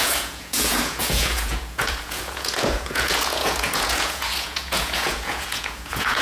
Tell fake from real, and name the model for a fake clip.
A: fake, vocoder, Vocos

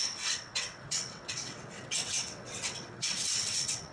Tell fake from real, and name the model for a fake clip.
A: fake, vocoder, WaveNeXt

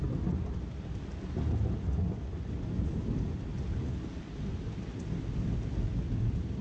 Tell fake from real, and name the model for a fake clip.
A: real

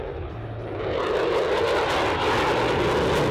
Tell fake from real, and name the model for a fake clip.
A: real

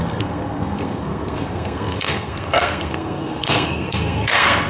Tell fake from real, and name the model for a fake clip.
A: fake, codec, SNAC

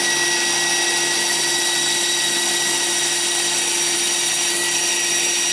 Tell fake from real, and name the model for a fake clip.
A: real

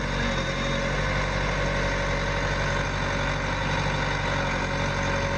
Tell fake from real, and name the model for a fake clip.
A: real